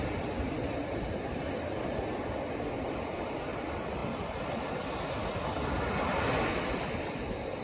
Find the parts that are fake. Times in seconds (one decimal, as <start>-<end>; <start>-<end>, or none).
none